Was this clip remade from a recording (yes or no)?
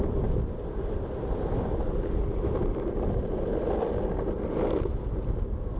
no